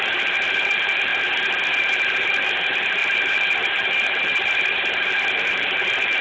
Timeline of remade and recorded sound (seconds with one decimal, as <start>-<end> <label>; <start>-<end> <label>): 0.0-1.1 remade; 1.1-1.8 recorded; 1.8-6.2 remade